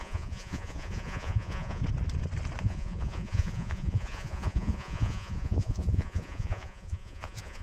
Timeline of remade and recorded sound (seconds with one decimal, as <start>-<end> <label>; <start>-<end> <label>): 0.0-1.8 remade; 1.8-2.6 recorded; 2.6-7.6 remade